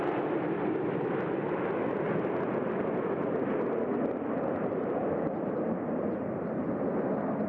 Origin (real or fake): real